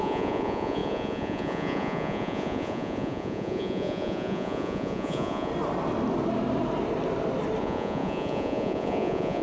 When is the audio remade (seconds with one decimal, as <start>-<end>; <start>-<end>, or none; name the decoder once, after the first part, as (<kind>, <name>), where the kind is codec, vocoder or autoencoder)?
0.0-5.5 (vocoder, Vocos); 7.6-9.4